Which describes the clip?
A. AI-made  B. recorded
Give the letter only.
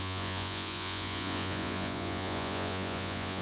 A